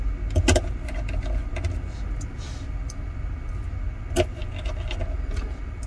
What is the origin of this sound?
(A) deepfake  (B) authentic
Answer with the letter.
B